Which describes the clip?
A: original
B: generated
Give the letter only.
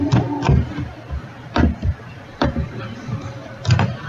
B